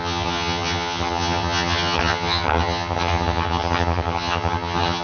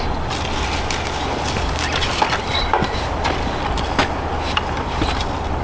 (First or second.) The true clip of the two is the second